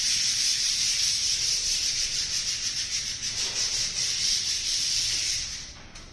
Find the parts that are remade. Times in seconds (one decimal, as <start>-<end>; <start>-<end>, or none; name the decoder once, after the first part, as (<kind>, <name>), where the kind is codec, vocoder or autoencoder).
0.0-3.2 (vocoder, BigVGAN v2); 3.7-6.1